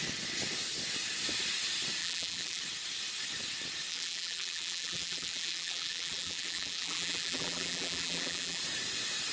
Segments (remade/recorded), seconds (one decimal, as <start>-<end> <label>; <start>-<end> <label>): 0.0-2.0 recorded; 2.0-2.6 remade; 2.6-3.9 recorded; 3.9-8.6 remade; 8.6-9.3 recorded